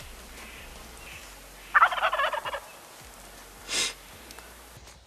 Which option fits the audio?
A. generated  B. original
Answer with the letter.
B